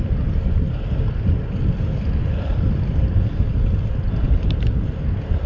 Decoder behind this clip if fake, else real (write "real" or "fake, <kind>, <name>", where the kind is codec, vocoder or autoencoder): fake, vocoder, BigVGAN v2